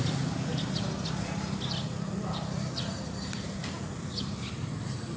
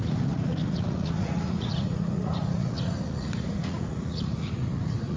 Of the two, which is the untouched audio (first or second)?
first